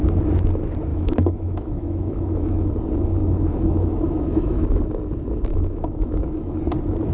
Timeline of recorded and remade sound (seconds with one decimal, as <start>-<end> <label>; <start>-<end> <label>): 0.0-0.9 recorded; 0.9-2.7 remade; 2.7-3.2 recorded; 3.2-4.8 remade; 4.8-5.5 recorded; 5.5-6.6 remade; 6.6-7.1 recorded